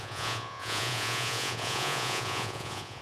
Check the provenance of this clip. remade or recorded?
remade